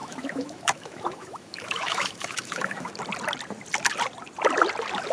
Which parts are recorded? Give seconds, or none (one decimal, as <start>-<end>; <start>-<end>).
2.9-5.1